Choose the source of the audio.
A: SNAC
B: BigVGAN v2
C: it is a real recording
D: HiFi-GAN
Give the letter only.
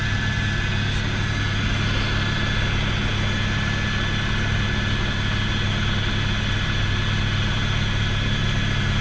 C